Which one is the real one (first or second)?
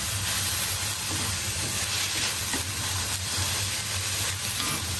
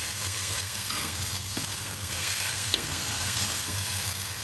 first